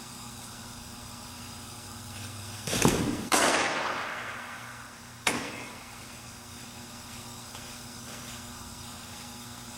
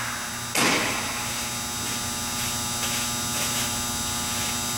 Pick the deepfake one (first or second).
first